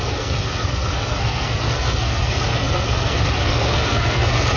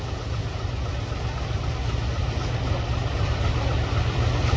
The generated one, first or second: first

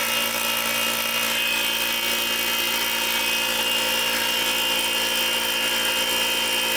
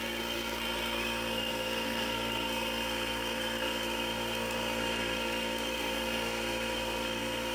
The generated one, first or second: second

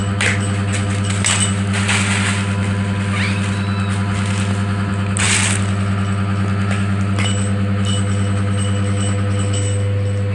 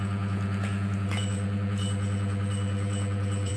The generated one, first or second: second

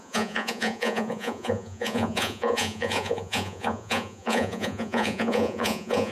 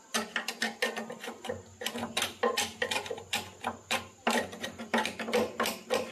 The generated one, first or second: first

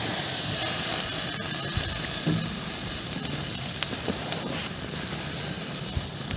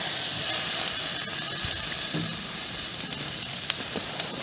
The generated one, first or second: second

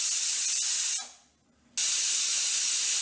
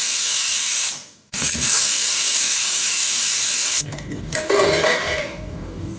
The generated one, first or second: second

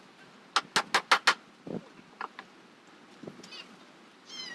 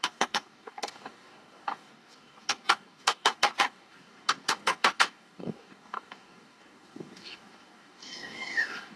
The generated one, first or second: second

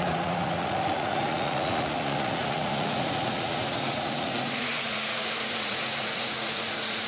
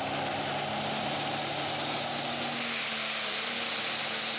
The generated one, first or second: first